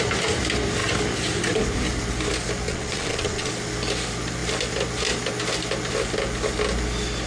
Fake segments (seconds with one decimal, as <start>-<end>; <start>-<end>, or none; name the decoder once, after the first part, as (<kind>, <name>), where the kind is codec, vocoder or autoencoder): 2.7-3.5 (vocoder, WaveNeXt)